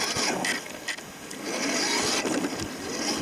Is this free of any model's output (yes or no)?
yes